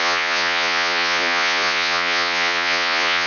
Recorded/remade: remade